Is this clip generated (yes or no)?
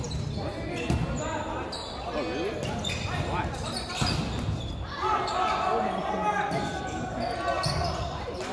no